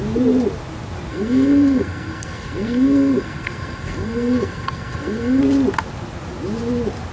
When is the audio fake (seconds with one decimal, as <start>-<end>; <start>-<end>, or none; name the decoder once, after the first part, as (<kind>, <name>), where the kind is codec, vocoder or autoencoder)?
1.1-5.4 (codec, SNAC)